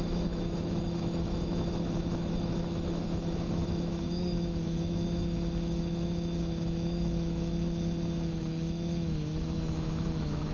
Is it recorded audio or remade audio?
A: remade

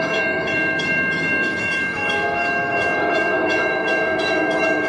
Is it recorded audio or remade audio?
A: remade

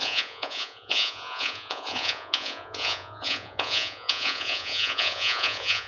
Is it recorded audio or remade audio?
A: remade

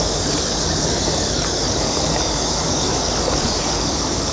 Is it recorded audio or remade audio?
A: remade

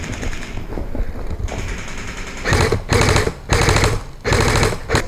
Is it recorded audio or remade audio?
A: recorded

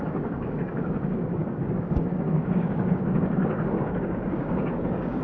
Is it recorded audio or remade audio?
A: remade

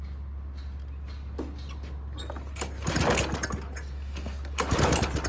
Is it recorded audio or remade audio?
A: recorded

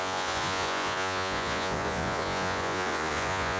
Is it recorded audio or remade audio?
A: remade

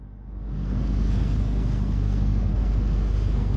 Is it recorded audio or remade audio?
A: remade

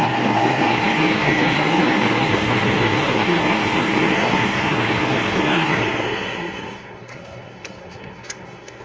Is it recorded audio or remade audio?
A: remade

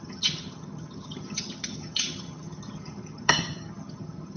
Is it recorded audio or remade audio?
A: remade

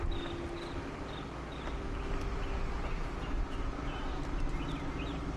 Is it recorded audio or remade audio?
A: recorded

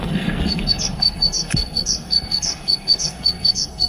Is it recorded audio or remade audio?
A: remade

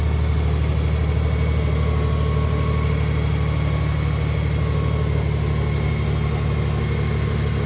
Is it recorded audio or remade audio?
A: recorded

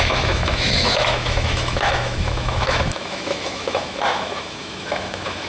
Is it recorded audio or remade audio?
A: remade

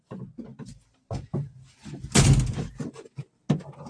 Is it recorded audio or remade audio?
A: recorded